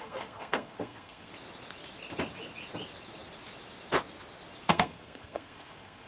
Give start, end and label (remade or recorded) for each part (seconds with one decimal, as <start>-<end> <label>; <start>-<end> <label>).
0.0-1.3 remade; 1.3-4.7 recorded; 4.7-6.1 remade